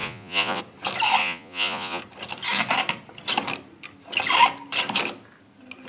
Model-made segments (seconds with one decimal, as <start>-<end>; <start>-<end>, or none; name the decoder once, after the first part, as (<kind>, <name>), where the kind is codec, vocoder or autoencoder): 0.0-0.6 (vocoder, Vocos); 1.2-2.0